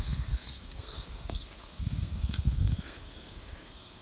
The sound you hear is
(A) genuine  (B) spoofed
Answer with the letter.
B